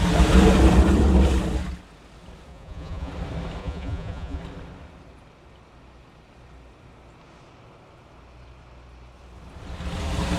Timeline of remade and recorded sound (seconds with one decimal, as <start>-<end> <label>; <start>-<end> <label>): 0.0-2.5 recorded; 2.5-3.1 remade; 3.1-3.6 recorded; 3.6-4.4 remade; 4.4-10.4 recorded